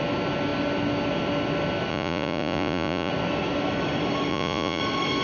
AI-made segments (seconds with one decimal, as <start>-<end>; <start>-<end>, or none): 1.9-3.1; 4.3-4.8